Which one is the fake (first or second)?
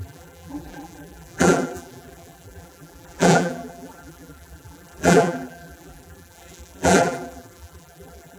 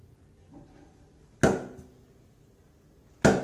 first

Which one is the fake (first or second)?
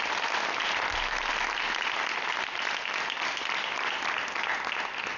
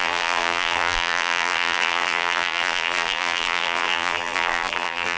second